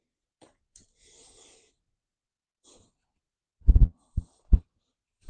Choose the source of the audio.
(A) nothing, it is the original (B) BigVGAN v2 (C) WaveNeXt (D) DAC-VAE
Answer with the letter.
A